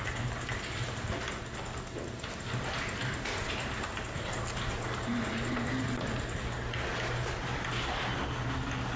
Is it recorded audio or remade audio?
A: recorded